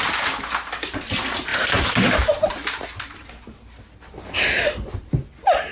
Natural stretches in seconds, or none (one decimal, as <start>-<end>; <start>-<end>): 0.0-1.5; 2.4-5.7

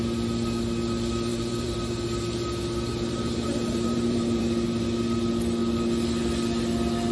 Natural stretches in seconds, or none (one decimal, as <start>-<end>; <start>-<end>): 0.0-1.3; 1.9-2.9; 4.4-7.1

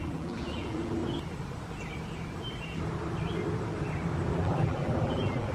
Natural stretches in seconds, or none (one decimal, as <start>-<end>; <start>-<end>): 1.0-4.3

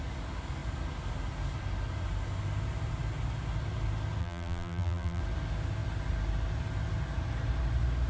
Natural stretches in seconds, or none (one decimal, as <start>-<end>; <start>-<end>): 0.0-4.2; 5.2-8.1

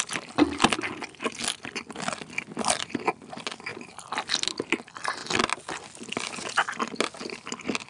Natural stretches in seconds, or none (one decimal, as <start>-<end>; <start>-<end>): 0.0-3.7; 4.3-7.9

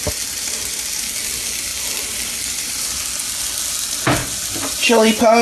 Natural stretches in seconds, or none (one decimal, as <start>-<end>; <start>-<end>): 0.0-5.4

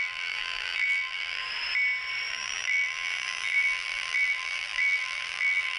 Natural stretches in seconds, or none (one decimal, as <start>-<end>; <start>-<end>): 1.4-2.3

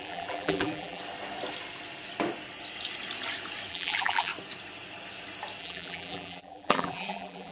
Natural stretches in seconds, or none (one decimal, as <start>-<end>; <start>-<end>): 1.0-3.7; 4.3-5.6